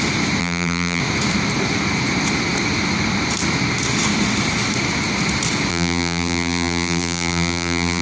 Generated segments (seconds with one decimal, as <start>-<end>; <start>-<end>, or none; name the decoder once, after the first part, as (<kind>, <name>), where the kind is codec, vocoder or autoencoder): 0.4-1.0 (vocoder, BigVGAN v2); 5.7-8.0